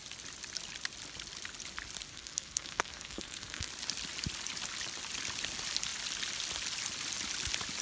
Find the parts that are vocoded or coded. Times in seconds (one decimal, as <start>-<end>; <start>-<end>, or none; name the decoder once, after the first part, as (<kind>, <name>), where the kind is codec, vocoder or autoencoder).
2.1-3.7 (codec, SNAC)